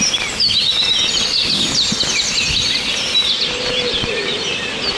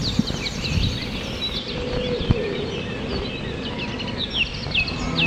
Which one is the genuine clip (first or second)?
first